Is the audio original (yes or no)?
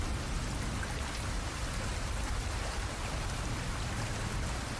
yes